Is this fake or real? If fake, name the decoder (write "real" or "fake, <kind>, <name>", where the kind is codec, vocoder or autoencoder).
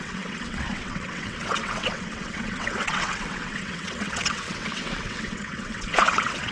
fake, vocoder, WaveNeXt